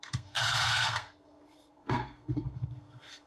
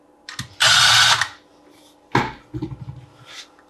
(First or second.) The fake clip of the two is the first